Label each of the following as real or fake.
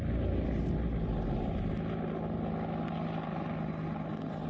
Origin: real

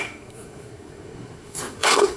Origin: fake